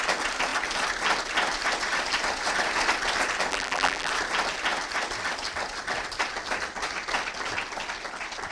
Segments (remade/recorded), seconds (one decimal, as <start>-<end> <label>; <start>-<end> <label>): 0.0-3.5 recorded; 3.5-4.1 remade; 4.1-8.5 recorded